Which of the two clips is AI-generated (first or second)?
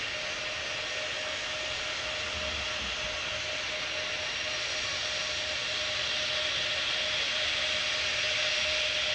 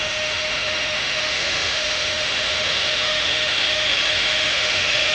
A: second